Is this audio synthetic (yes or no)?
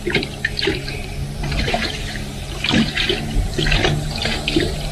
no